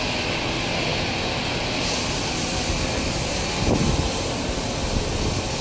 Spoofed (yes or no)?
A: no